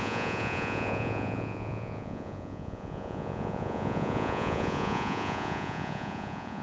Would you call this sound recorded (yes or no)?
no